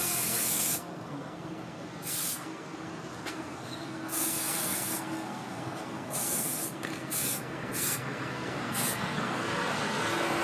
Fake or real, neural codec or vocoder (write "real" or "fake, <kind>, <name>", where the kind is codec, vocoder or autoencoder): fake, codec, SNAC